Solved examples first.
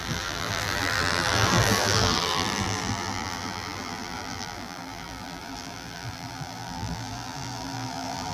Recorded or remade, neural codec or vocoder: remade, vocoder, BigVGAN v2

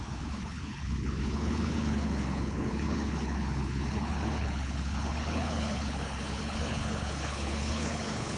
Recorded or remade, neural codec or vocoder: remade, codec, HILCodec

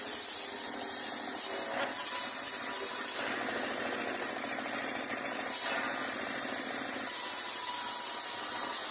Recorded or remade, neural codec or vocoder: recorded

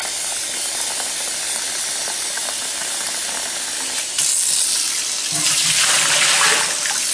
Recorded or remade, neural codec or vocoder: recorded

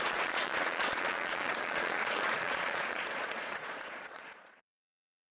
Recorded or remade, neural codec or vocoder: remade, vocoder, Vocos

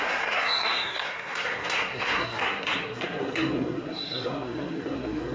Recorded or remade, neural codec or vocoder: remade, codec, SNAC